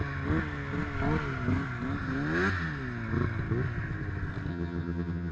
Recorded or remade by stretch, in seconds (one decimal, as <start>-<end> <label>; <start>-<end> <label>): 0.0-4.5 recorded; 4.5-5.3 remade